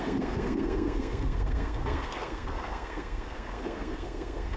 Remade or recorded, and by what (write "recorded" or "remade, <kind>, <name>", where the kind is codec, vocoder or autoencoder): remade, codec, SNAC